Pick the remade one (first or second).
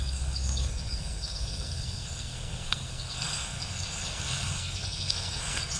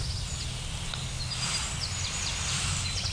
first